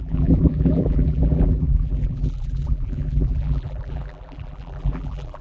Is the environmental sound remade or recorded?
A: remade